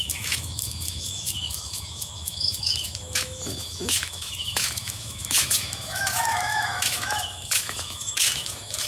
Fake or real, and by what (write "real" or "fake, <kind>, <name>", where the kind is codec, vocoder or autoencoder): fake, autoencoder, DAC-VAE